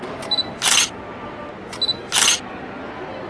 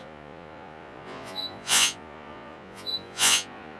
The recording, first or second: first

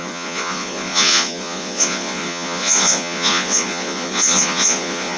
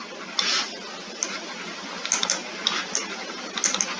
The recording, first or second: second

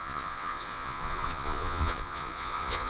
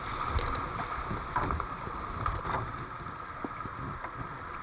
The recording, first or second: second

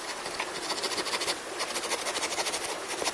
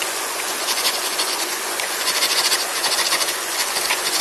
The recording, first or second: first